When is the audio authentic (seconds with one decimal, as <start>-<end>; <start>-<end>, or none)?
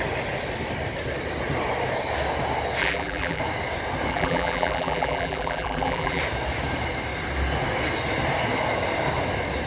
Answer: 0.0-2.8; 3.4-4.1; 6.2-9.7